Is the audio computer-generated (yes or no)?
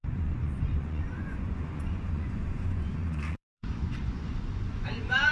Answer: yes